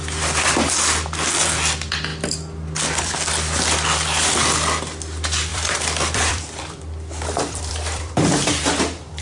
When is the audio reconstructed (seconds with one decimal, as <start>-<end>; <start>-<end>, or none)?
5.5-8.5